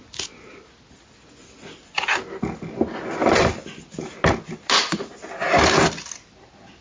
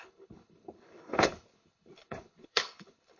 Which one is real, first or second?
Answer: first